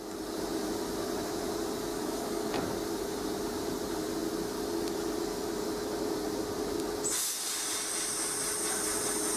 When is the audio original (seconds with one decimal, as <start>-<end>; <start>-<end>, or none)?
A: 0.0-1.9; 2.5-9.4